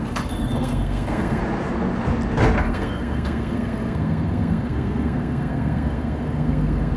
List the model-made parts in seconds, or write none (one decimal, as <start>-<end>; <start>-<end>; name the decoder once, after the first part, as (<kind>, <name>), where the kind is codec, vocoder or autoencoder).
0.0-1.4 (codec, SNAC); 2.6-7.0